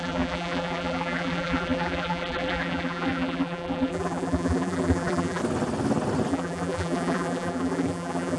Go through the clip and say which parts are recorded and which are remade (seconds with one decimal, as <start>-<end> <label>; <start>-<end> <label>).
0.0-5.4 remade; 5.4-6.3 recorded; 6.3-8.4 remade